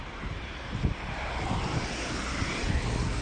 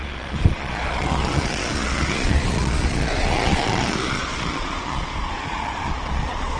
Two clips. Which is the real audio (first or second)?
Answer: first